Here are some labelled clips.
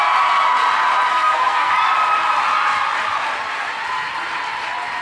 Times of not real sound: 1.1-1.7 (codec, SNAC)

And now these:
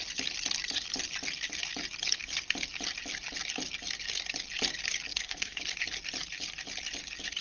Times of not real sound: 5.1-5.6 (codec, SNAC)

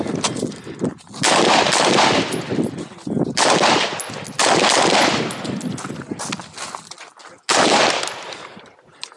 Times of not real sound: none

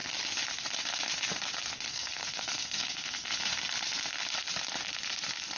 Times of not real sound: 1.9-3.5 (codec, SNAC)

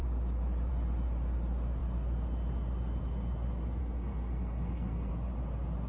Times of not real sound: 3.8-5.1 (codec, SNAC)